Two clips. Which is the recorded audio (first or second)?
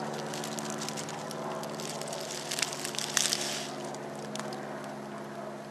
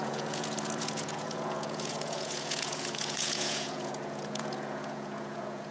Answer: first